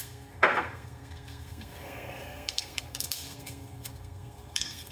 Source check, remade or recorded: remade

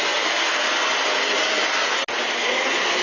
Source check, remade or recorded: recorded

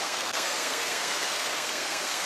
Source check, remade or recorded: remade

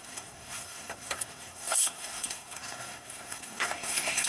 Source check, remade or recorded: remade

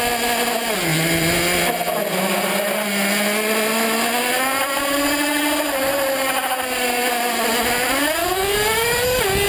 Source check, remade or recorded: recorded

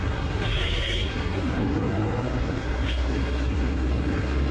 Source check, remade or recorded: remade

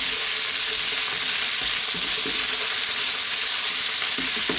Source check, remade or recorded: recorded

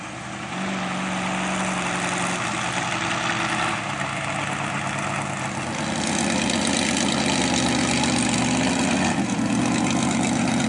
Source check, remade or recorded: recorded